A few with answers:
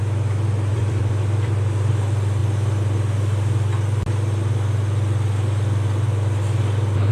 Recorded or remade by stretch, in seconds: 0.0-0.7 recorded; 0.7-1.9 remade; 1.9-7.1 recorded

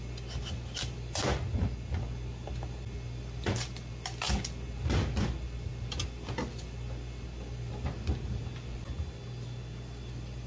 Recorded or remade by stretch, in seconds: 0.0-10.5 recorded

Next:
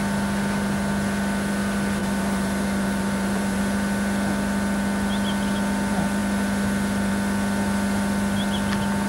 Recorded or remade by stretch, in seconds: 0.0-2.0 recorded; 2.0-3.6 remade; 3.6-9.1 recorded

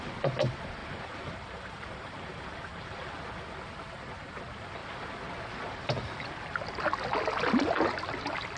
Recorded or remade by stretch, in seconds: 0.0-0.8 recorded; 0.8-3.1 remade; 3.1-8.6 recorded